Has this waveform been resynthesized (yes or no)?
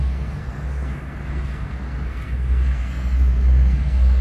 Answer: yes